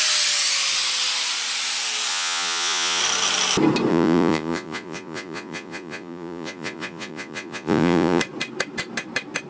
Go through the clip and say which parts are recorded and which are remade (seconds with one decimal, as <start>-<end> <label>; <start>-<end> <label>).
0.0-2.1 recorded; 2.1-3.0 remade; 3.0-3.9 recorded; 3.9-8.2 remade; 8.2-9.5 recorded